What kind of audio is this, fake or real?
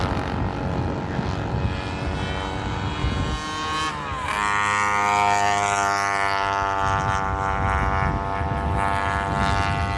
real